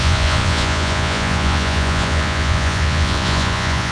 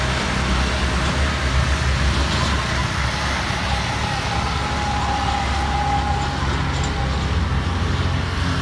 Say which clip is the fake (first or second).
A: first